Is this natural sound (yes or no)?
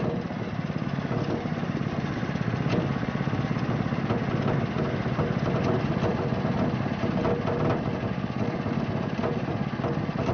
yes